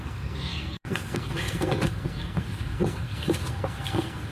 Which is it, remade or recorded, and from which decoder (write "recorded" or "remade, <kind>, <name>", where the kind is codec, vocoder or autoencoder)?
remade, codec, SNAC